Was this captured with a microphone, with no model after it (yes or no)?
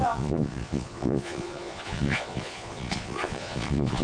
no